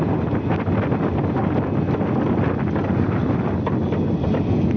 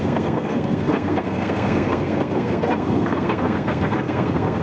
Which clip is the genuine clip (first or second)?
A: first